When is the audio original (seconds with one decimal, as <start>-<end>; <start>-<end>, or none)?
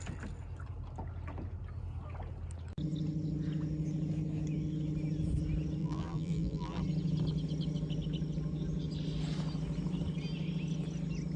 0.0-5.8; 6.8-11.4